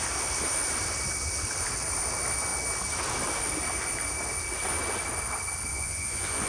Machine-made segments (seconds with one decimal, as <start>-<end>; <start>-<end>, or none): 5.7-6.5